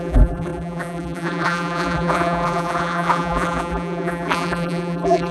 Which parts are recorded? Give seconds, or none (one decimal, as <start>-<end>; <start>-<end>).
none